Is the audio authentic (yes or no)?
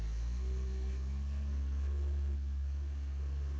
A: no